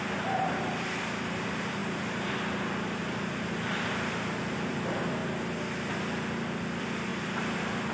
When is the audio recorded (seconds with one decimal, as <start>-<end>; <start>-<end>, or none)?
5.2-5.9